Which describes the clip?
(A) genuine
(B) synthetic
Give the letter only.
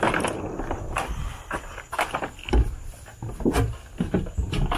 A